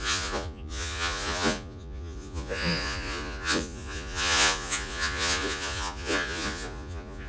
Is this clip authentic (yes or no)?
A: no